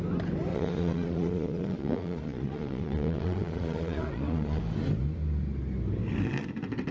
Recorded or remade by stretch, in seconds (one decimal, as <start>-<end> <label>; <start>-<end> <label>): 0.0-0.5 recorded; 0.5-4.6 remade; 4.6-6.9 recorded